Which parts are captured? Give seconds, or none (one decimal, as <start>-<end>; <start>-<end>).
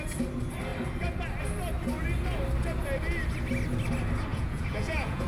0.0-4.3